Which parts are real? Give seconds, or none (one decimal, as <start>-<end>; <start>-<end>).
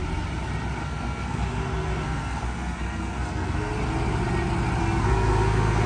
0.0-0.8; 3.7-4.8